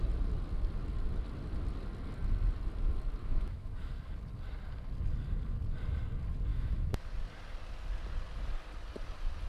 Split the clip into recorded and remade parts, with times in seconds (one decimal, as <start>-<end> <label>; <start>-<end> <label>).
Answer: 0.0-3.2 recorded; 3.2-3.9 remade; 3.9-6.5 recorded; 6.5-7.0 remade; 7.0-9.5 recorded